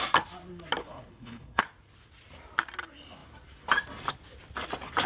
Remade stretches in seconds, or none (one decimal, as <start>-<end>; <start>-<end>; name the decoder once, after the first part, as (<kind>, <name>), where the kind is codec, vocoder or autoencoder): 0.8-1.6 (codec, HILCodec)